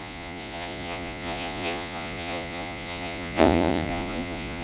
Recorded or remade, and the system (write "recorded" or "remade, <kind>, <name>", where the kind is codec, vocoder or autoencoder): remade, vocoder, Vocos